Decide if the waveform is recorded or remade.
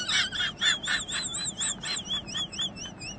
recorded